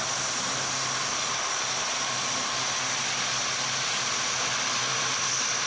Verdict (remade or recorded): recorded